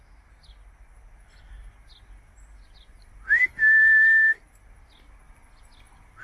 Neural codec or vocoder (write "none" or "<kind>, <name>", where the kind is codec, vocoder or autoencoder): none